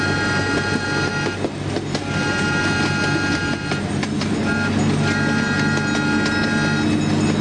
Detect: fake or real real